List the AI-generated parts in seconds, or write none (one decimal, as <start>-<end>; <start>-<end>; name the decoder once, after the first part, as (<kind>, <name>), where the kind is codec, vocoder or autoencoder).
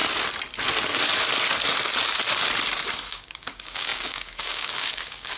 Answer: 3.1-5.4 (codec, DAC)